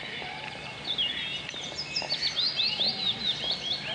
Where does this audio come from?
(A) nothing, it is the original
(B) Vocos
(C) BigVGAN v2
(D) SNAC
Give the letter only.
A